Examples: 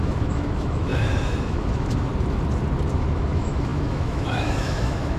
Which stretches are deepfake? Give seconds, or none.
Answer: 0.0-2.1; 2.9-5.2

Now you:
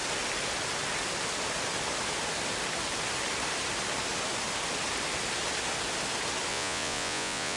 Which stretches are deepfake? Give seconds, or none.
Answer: 6.5-7.6

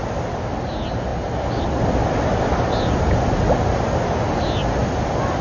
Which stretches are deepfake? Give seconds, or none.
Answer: none

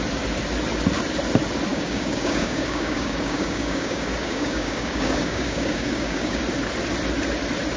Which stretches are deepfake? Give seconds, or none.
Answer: 1.7-6.4

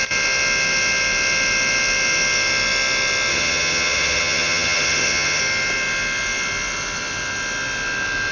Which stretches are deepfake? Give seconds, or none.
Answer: 3.3-5.4

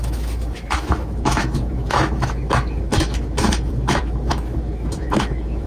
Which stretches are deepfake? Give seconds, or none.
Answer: 0.0-5.7

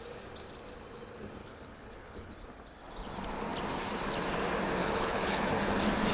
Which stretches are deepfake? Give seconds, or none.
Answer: 1.4-2.3; 4.8-5.5